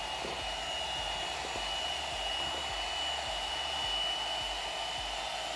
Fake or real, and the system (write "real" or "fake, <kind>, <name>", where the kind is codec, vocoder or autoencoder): real